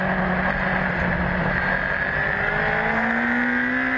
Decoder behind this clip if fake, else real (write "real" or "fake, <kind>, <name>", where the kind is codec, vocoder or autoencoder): real